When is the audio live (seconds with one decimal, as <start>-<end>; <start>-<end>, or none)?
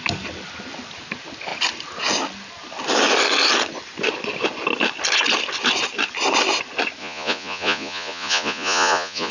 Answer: 0.0-7.0